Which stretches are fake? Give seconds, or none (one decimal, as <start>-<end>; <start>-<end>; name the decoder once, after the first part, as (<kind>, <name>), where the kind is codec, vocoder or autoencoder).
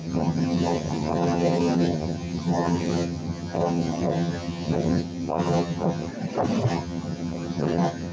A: 0.0-6.1 (vocoder, HiFi-GAN); 6.7-8.1